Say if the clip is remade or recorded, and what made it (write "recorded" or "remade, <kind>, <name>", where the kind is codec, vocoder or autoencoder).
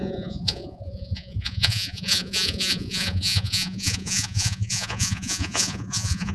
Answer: remade, vocoder, Vocos